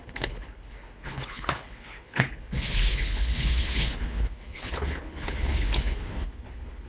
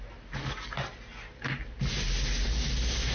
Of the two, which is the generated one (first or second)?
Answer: first